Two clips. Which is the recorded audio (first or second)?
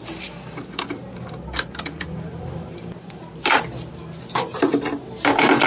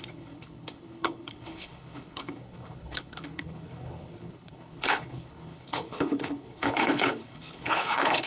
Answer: first